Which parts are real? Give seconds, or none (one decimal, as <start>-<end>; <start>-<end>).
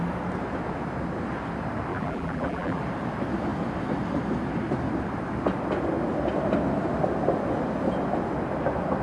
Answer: 0.0-1.9; 2.8-9.0